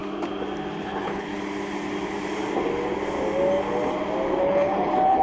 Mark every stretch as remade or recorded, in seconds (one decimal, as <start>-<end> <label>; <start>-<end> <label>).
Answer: 0.0-0.8 recorded; 0.8-1.3 remade; 1.3-4.4 recorded; 4.4-5.2 remade